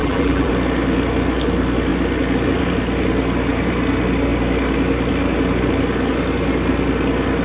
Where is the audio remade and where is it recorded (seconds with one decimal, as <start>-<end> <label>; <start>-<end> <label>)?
0.0-0.5 remade; 0.5-7.4 recorded

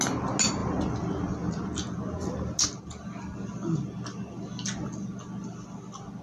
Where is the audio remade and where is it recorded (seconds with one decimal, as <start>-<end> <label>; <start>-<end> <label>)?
0.0-6.2 recorded

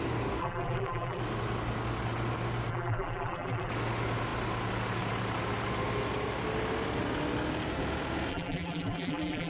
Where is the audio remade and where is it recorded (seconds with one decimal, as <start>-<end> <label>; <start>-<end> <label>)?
0.0-0.4 recorded; 0.4-1.2 remade; 1.2-2.7 recorded; 2.7-3.7 remade; 3.7-8.3 recorded; 8.3-9.5 remade

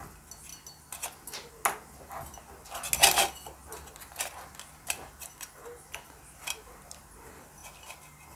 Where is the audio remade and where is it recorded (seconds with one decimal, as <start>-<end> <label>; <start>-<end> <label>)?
0.0-8.4 recorded